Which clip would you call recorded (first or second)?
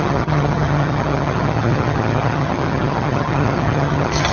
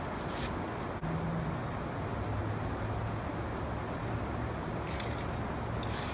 second